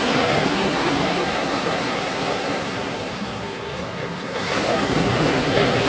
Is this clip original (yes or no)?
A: no